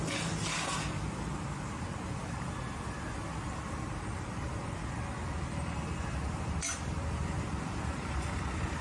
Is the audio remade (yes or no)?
no